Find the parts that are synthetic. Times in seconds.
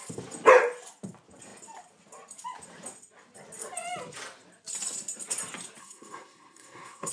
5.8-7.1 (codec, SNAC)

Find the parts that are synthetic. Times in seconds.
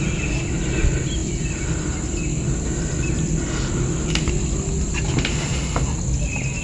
none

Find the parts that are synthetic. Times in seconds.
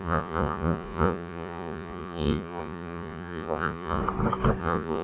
0.0-4.0 (vocoder, Vocos); 4.6-5.0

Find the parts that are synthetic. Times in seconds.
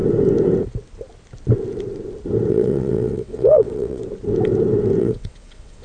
2.5-4.0 (vocoder, WaveNeXt); 5.0-5.8